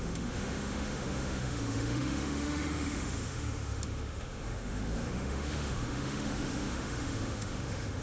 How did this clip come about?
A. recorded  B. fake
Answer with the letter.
B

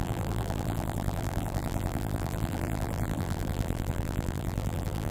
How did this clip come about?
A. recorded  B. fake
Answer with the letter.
B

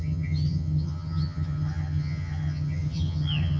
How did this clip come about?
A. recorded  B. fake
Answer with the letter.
B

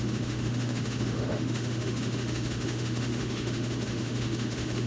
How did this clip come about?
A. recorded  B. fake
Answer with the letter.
B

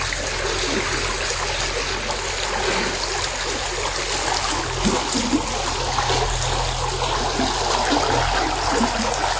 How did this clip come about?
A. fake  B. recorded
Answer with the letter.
B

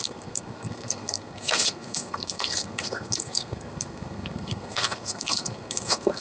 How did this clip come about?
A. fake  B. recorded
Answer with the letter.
A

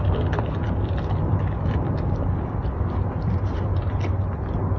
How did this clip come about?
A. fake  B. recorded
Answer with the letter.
B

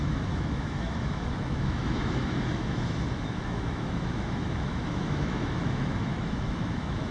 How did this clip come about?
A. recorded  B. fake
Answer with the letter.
B